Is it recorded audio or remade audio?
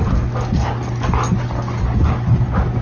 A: recorded